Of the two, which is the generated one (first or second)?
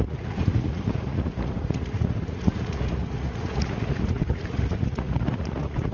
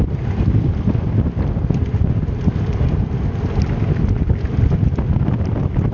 first